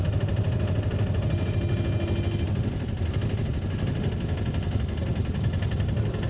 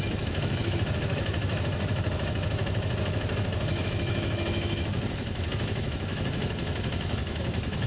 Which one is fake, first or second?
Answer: second